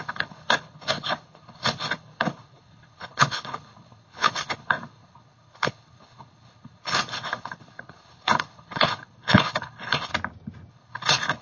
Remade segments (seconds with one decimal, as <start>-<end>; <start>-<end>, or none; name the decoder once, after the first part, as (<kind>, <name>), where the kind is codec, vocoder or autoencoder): 0.0-10.1 (codec, HILCodec); 10.7-11.4